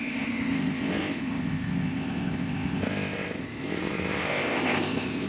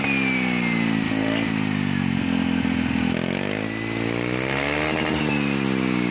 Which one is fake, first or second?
first